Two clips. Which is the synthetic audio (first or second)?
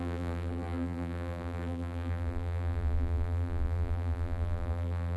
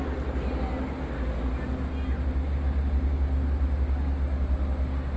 first